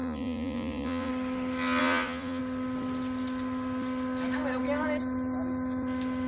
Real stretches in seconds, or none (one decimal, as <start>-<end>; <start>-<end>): 1.1-1.8; 2.4-6.3